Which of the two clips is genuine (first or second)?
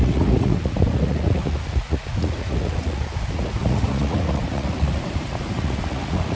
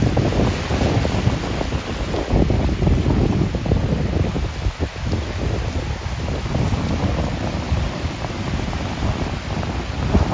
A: second